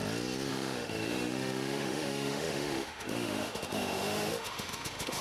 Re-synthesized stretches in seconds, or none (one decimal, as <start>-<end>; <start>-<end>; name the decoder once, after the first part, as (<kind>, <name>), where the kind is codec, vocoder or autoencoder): 0.5-5.2 (autoencoder, DAC-VAE)